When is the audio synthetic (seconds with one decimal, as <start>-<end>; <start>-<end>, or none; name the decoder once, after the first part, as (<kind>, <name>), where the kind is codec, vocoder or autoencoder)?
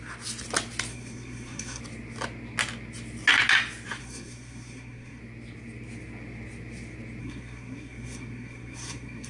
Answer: 0.9-1.8 (codec, SNAC); 4.0-5.2; 7.2-9.3